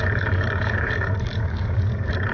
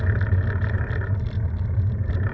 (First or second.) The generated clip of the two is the first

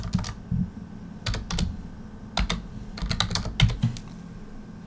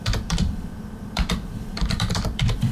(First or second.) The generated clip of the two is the second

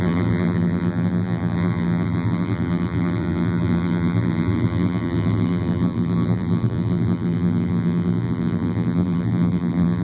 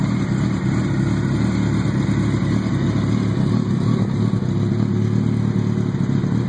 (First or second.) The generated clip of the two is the first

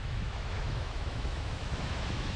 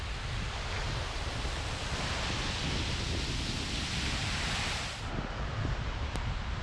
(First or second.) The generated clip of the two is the first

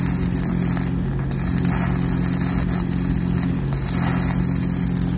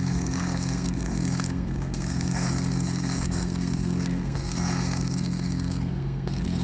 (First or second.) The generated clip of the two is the second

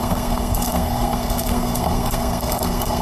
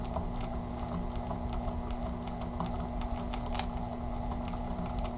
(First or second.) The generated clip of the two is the first